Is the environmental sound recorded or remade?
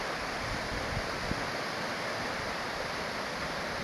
recorded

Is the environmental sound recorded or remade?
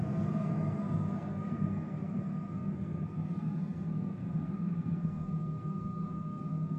remade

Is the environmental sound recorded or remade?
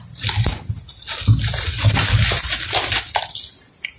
recorded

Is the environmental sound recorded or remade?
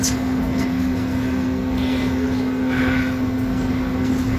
remade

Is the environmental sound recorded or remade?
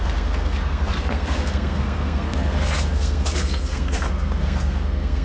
remade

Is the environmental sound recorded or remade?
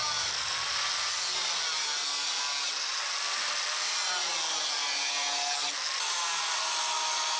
recorded